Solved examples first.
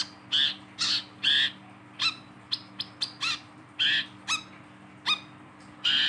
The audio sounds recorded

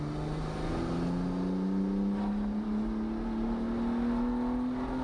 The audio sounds recorded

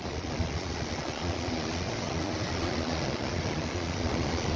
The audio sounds remade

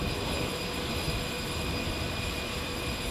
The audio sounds recorded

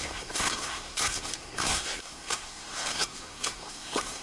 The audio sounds remade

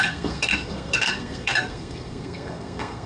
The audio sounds remade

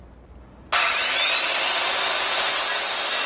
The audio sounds recorded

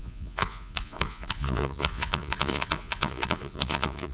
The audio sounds remade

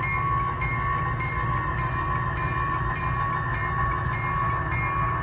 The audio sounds recorded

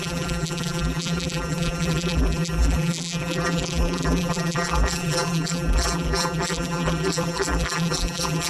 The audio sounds remade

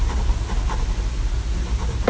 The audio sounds recorded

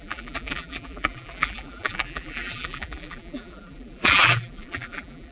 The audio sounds remade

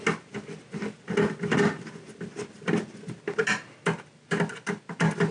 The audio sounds recorded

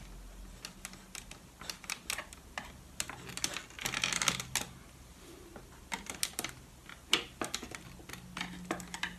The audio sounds recorded